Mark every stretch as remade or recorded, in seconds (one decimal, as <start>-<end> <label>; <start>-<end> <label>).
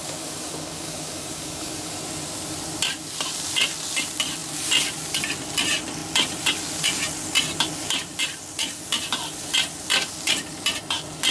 0.0-1.9 remade; 1.9-11.3 recorded